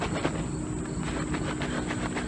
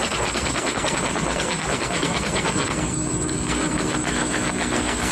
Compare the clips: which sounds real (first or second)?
first